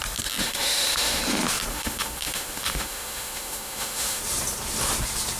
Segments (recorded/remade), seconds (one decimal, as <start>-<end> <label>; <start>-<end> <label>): 0.0-0.4 recorded; 0.4-1.2 remade; 1.2-1.7 recorded; 1.7-4.2 remade; 4.2-5.4 recorded